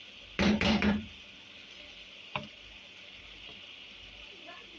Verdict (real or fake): fake